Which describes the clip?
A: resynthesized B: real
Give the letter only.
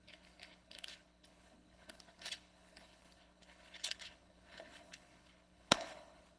A